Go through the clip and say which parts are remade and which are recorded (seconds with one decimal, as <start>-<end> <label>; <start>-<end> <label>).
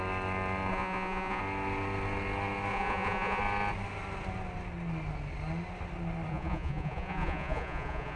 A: 0.0-0.7 recorded; 0.7-1.4 remade; 1.4-2.7 recorded; 2.7-3.4 remade; 3.4-6.3 recorded; 6.3-8.2 remade